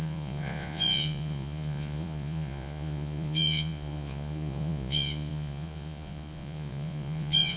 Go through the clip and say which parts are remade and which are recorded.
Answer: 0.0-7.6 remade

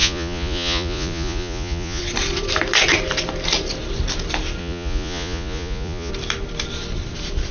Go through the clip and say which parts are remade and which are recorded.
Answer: 0.0-2.0 remade; 2.0-4.6 recorded; 4.6-6.1 remade; 6.1-7.5 recorded

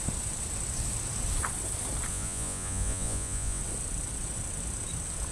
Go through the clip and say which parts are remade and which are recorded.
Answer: 0.0-2.1 recorded; 2.1-3.6 remade; 3.6-5.3 recorded

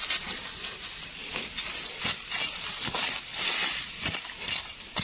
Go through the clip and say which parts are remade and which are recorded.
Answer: 0.0-5.0 recorded

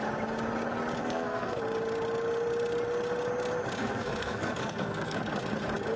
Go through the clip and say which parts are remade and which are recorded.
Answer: 0.0-1.0 recorded; 1.0-1.6 remade; 1.6-3.8 recorded; 3.8-5.2 remade; 5.2-6.0 recorded

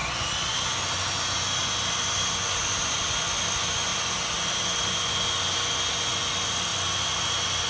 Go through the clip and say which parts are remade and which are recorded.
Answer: 0.0-7.7 remade